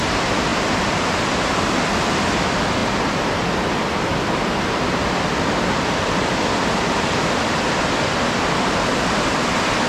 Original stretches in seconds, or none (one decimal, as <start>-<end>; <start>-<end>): 0.0-0.5; 1.2-9.9